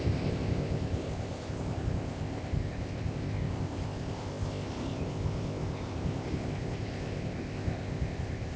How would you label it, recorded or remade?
remade